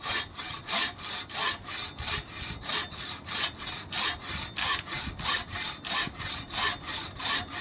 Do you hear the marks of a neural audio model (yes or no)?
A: no